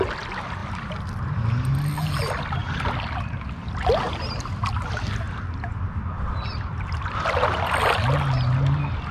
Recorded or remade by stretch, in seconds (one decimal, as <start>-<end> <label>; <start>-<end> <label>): 0.0-9.1 recorded